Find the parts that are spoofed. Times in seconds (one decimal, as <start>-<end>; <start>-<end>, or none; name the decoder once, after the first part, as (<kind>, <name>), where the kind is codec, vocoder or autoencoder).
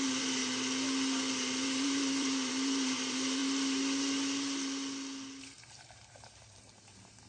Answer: 0.0-0.4 (vocoder, BigVGAN v2); 1.4-3.4; 5.4-7.3